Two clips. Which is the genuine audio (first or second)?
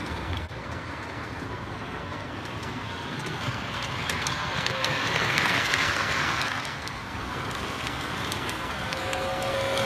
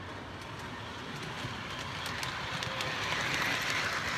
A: second